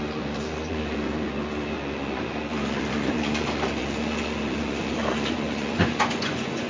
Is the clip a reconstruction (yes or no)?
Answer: yes